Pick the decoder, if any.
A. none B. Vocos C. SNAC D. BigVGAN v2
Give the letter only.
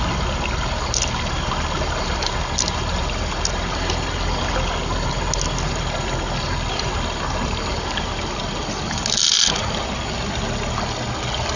A